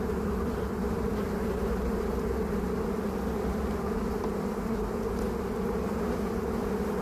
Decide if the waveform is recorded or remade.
recorded